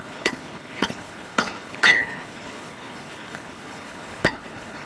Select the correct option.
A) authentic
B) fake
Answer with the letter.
B